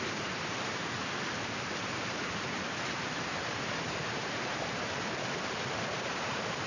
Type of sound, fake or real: fake